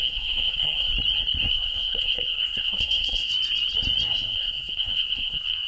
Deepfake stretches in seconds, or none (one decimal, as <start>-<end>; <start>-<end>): 0.0-0.9; 1.5-3.3; 4.1-5.7